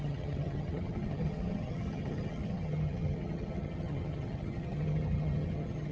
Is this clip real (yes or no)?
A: no